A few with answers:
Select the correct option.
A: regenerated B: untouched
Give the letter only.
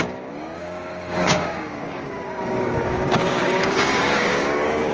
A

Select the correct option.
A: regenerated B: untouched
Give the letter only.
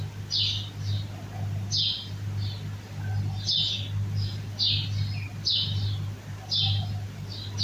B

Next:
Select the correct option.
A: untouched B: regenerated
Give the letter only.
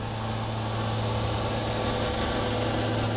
A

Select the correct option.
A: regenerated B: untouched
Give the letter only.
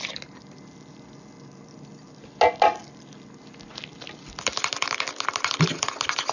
B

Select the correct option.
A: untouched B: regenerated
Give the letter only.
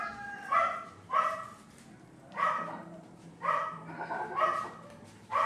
B